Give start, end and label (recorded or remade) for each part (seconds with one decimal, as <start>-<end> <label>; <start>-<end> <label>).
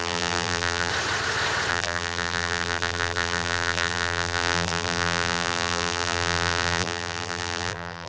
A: 0.0-0.9 remade; 0.9-1.7 recorded; 1.7-8.1 remade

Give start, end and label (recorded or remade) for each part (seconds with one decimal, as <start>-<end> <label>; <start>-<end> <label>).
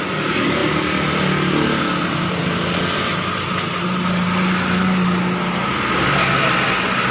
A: 0.0-7.1 recorded